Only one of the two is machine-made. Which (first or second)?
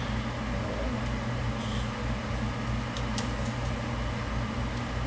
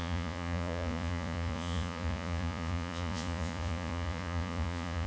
second